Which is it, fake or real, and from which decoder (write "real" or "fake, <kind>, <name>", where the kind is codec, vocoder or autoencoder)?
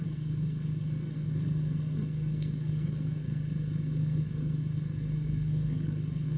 fake, codec, SNAC